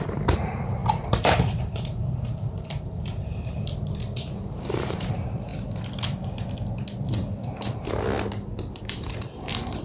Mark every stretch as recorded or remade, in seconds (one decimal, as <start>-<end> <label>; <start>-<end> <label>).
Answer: 0.0-5.5 remade; 5.5-8.8 recorded; 8.8-9.8 remade